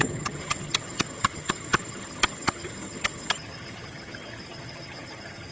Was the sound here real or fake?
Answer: fake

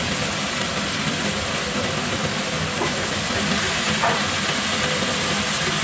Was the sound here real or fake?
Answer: real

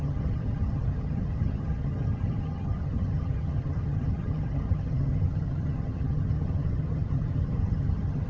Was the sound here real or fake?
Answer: fake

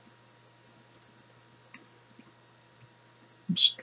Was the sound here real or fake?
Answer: real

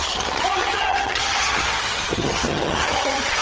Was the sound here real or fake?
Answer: fake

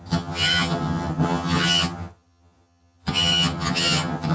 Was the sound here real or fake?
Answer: fake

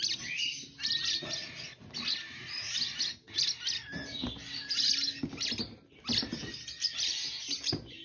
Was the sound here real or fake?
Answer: real